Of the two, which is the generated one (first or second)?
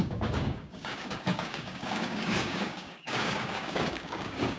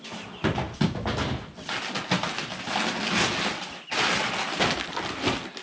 first